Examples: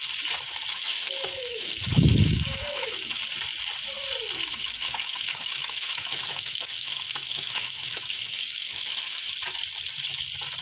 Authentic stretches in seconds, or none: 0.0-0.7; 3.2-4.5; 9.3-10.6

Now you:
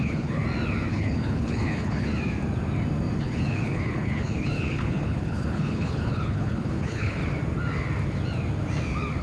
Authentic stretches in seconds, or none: 0.4-0.9; 2.1-3.2; 7.2-9.2

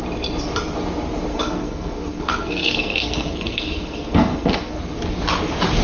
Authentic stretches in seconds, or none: 0.0-1.3; 4.8-5.8

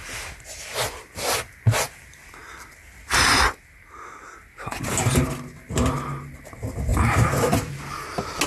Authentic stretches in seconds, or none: 0.0-6.9; 7.7-8.5

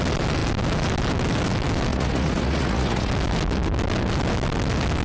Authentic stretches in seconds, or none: 0.0-1.9; 3.1-5.0